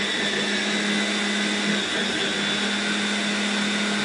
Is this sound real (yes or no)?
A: yes